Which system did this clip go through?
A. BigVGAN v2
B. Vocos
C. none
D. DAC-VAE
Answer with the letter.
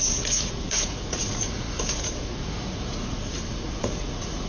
B